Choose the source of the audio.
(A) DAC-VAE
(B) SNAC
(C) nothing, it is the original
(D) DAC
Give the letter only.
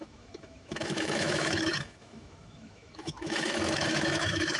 A